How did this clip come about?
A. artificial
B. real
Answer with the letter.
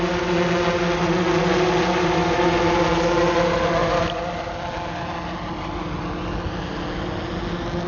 B